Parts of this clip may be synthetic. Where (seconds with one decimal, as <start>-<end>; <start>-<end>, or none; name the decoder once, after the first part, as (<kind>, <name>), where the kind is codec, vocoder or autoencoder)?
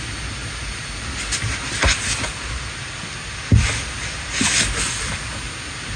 none